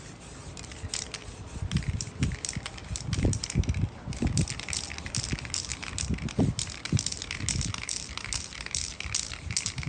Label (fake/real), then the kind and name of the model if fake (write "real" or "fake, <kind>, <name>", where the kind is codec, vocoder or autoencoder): real